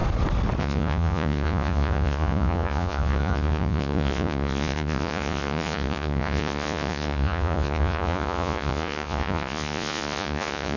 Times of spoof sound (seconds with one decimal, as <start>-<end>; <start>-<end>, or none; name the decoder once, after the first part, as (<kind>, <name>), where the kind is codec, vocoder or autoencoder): 0.6-10.8 (vocoder, Vocos)